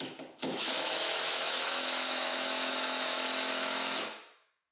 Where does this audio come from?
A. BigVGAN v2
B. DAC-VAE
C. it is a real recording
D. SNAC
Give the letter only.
B